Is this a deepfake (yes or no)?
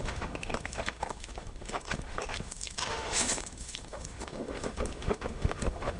yes